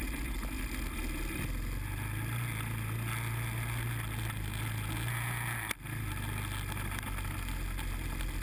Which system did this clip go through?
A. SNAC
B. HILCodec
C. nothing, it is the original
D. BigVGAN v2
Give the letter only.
C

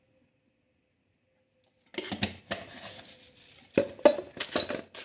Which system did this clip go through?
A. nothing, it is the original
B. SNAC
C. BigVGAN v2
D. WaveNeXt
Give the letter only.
A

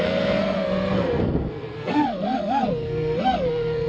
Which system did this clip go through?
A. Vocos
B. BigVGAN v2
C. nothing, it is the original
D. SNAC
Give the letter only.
D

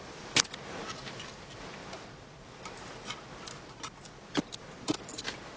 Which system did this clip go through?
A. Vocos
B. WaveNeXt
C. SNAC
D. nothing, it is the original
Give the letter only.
D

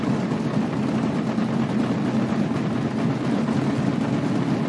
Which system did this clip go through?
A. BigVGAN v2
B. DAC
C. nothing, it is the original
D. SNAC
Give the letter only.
C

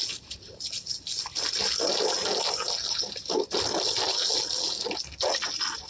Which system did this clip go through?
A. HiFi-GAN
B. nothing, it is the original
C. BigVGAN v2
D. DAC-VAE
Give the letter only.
B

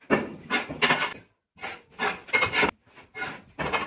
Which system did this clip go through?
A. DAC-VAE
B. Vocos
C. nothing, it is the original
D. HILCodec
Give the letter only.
C